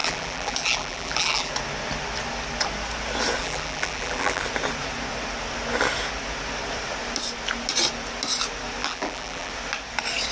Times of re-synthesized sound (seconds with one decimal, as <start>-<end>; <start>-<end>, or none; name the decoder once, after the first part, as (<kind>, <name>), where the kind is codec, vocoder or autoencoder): 0.0-1.5 (vocoder, BigVGAN v2); 3.4-4.4; 8.8-9.5